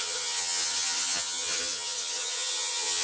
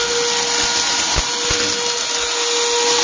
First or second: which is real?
second